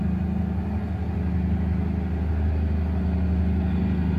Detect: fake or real real